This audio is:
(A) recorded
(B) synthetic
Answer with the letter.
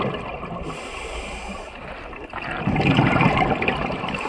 A